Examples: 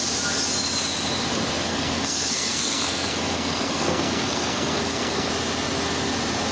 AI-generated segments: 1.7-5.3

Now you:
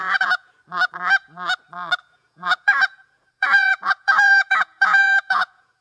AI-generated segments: 0.0-0.5; 2.0-5.8

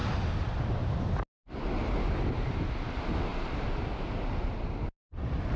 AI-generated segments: none

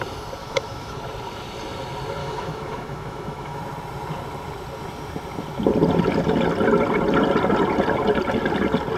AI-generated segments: 0.4-1.0; 2.2-3.6

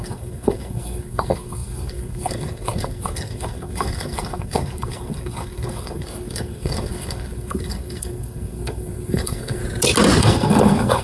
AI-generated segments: 0.0-9.6; 10.2-11.0

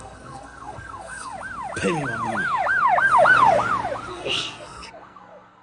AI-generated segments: 0.0-1.3; 4.1-5.6

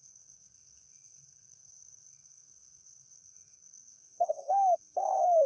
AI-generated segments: 0.0-5.5